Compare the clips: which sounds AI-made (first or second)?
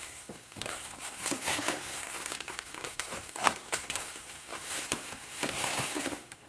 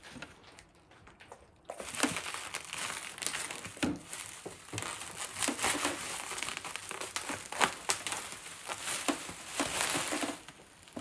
first